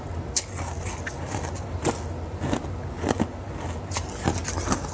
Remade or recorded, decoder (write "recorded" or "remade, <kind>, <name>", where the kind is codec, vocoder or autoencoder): recorded